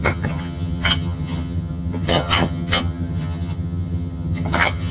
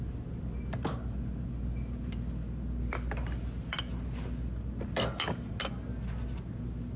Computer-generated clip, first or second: first